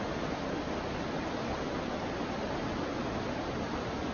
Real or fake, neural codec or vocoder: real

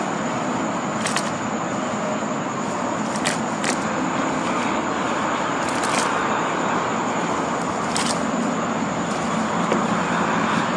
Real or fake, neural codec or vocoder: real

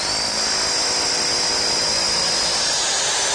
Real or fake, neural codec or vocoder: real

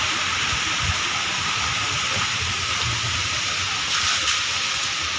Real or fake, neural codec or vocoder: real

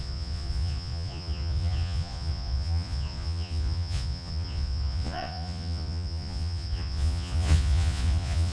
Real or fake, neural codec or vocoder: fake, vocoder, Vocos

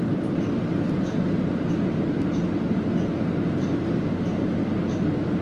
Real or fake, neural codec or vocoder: real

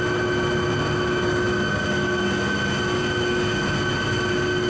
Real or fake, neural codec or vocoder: real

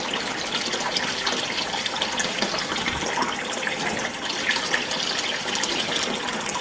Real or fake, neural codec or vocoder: real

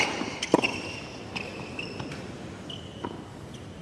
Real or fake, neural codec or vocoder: real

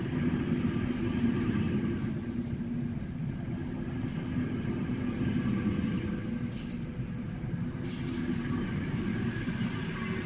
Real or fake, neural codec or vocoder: real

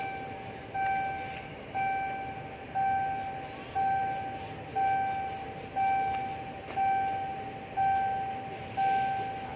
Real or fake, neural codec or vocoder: real